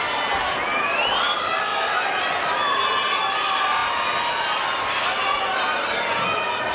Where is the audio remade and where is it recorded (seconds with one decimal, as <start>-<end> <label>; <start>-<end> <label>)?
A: 0.0-6.7 recorded